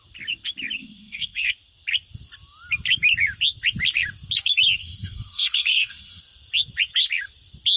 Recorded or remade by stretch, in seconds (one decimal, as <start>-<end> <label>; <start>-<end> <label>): 0.0-0.8 recorded; 0.8-1.5 remade; 1.5-4.8 recorded; 4.8-6.2 remade; 6.2-7.8 recorded